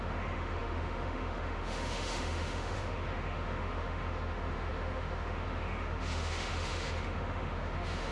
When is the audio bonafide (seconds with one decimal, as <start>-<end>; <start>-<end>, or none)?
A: none